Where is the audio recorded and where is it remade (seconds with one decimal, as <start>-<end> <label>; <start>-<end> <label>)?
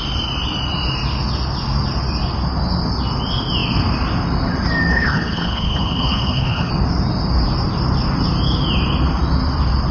0.0-4.9 recorded; 4.9-6.7 remade; 6.7-9.9 recorded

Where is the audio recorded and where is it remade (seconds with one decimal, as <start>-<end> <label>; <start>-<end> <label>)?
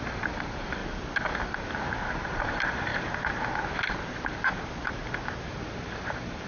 0.0-0.8 remade; 0.8-2.1 recorded; 2.1-2.9 remade; 2.9-5.4 recorded; 5.4-6.5 remade